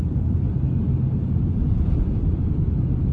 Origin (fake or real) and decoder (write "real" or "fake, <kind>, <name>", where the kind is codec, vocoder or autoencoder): real